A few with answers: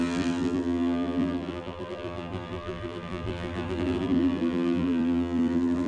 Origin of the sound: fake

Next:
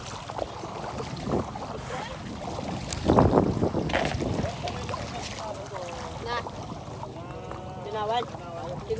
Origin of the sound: real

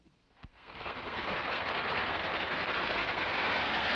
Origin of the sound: fake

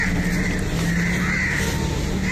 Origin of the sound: real